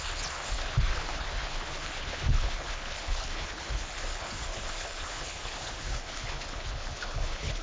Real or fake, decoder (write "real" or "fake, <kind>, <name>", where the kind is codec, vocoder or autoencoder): fake, codec, HILCodec